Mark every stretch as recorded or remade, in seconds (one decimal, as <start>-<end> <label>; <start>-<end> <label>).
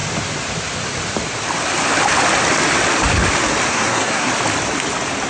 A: 0.0-3.7 recorded; 3.7-4.3 remade; 4.3-5.3 recorded